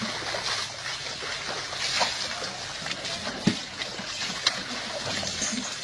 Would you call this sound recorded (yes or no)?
yes